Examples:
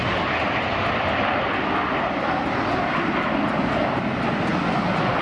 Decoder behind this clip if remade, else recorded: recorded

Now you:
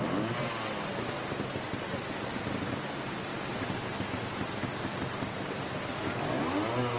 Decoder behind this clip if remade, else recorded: recorded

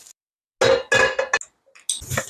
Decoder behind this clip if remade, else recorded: recorded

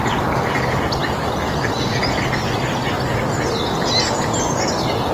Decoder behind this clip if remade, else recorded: recorded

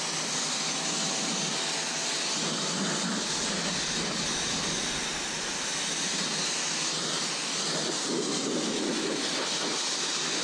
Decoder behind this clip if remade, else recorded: recorded